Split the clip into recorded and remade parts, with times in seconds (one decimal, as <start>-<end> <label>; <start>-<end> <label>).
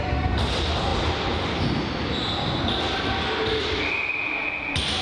0.0-5.0 recorded